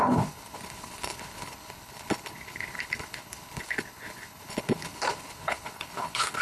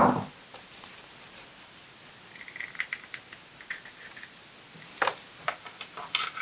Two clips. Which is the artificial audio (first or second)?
first